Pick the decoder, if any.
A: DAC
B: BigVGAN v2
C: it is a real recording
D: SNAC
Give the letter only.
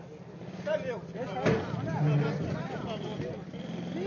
C